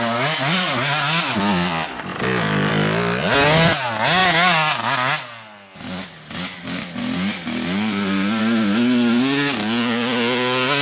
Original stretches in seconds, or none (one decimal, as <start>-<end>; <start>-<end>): 0.0-10.8